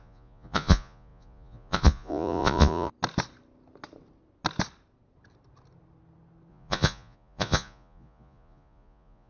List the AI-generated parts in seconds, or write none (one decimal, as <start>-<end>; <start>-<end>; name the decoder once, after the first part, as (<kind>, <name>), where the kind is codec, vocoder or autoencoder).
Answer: 0.0-2.9 (vocoder, Vocos); 6.5-9.3